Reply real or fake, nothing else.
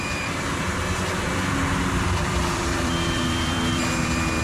fake